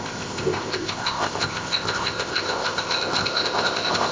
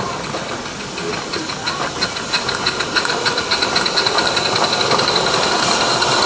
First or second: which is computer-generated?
first